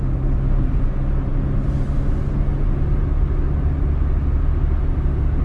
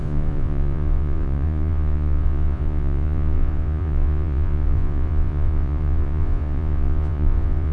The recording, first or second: first